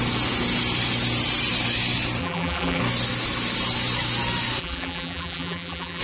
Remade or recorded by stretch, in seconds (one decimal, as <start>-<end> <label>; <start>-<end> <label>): 0.0-2.2 recorded; 2.2-2.8 remade; 2.8-4.6 recorded; 4.6-6.0 remade